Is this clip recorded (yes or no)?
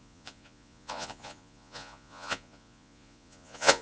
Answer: no